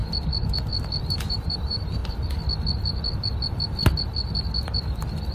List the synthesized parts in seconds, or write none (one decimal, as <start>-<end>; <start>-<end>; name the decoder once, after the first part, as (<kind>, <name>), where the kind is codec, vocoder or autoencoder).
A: 1.0-2.0 (vocoder, BigVGAN v2)